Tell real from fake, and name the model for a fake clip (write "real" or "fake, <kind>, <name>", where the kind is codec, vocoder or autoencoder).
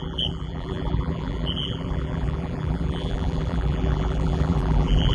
fake, vocoder, BigVGAN v2